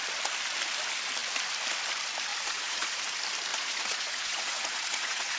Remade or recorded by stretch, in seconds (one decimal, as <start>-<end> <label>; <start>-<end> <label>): 0.0-2.3 recorded; 2.3-3.0 remade; 3.0-3.5 recorded; 3.5-5.4 remade